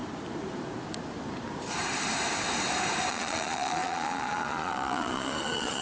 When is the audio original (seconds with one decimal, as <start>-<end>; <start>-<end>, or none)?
0.0-3.1

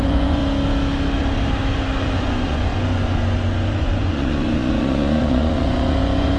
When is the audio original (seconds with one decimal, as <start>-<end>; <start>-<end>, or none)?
0.4-2.2

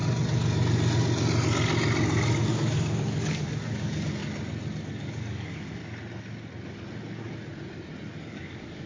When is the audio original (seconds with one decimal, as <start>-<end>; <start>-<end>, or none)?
0.0-2.5; 4.2-4.9; 5.8-8.2

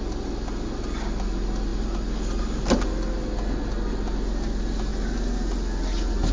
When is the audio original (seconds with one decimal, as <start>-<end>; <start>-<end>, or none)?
0.0-6.3

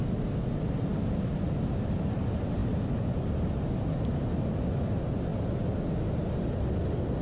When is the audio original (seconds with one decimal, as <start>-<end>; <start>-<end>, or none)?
0.0-7.2